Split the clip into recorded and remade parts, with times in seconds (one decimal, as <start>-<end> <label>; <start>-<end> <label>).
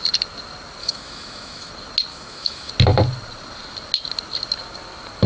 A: 0.0-0.8 recorded; 0.8-1.7 remade; 1.7-2.1 recorded; 2.1-2.7 remade; 2.7-5.3 recorded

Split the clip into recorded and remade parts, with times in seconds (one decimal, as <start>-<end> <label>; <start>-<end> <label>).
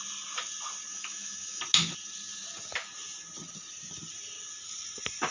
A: 0.0-0.9 recorded; 0.9-1.6 remade; 1.6-5.3 recorded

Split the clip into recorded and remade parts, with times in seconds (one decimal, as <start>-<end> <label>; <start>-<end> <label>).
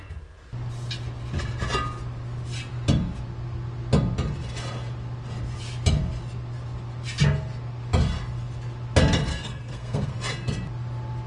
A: 0.0-9.3 recorded; 9.3-10.1 remade; 10.1-11.3 recorded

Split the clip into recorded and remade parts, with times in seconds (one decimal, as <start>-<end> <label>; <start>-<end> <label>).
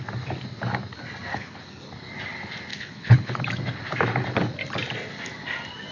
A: 0.0-1.3 recorded; 1.3-1.9 remade; 1.9-2.7 recorded; 2.7-3.4 remade; 3.4-5.9 recorded